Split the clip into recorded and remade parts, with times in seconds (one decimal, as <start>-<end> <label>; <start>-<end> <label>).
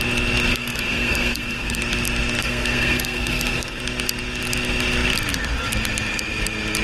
0.0-0.5 recorded; 0.5-1.8 remade; 1.8-2.4 recorded; 2.4-3.8 remade; 3.8-6.8 recorded